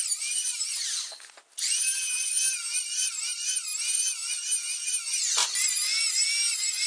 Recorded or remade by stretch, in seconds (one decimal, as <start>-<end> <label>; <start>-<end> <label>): 0.0-6.9 recorded

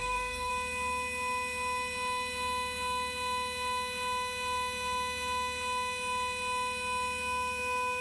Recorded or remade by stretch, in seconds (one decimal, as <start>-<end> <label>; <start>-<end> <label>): 0.0-0.5 remade; 0.5-8.0 recorded

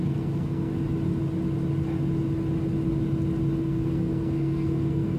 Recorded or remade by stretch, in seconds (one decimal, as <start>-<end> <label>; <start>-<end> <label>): 0.0-0.7 remade; 0.7-3.6 recorded; 3.6-5.2 remade

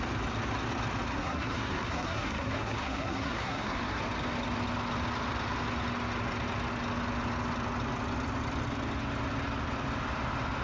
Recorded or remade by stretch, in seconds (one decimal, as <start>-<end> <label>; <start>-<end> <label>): 0.0-1.1 recorded; 1.1-4.0 remade; 4.0-10.6 recorded

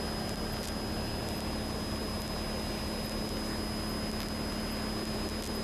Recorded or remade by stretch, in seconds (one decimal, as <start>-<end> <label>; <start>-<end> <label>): 0.0-5.6 recorded

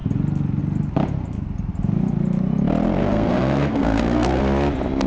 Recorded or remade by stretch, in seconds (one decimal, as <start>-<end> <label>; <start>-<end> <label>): 0.0-3.0 recorded; 3.0-4.4 remade; 4.4-5.1 recorded

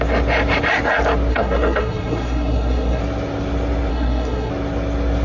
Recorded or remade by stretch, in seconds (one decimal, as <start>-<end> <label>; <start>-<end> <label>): 0.0-1.3 recorded; 1.3-3.0 remade; 3.0-3.9 recorded; 3.9-4.5 remade; 4.5-5.2 recorded

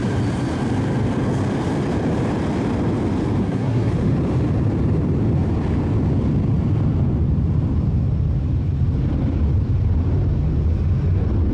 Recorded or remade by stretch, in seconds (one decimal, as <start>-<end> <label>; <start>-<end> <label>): 0.0-3.4 recorded; 3.4-3.9 remade; 3.9-11.5 recorded